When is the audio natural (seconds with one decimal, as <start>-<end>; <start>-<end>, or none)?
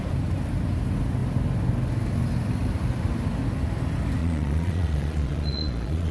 0.0-4.2